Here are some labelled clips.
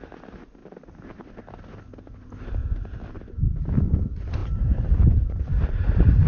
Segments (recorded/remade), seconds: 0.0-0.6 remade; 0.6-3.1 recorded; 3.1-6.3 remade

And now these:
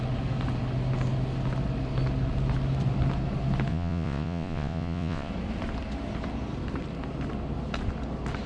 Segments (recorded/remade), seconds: 0.0-3.7 recorded; 3.7-5.3 remade; 5.3-8.5 recorded

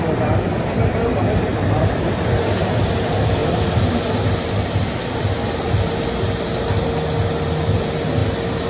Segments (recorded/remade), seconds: 0.0-1.5 recorded; 1.5-2.4 remade; 2.4-3.4 recorded; 3.4-6.6 remade; 6.6-8.7 recorded

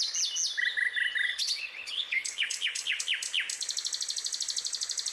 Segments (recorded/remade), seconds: 0.0-1.3 recorded; 1.3-3.0 remade; 3.0-5.1 recorded

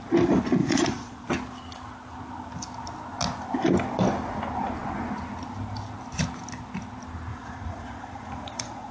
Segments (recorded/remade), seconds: 0.0-0.6 recorded; 0.6-1.3 remade; 1.3-7.3 recorded; 7.3-8.9 remade